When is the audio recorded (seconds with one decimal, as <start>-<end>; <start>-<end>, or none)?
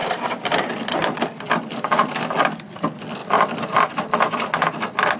0.7-5.2